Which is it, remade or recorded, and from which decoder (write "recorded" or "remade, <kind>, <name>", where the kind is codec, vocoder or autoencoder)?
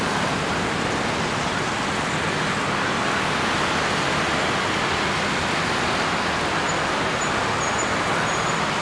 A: recorded